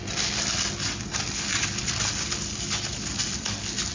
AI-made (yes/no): no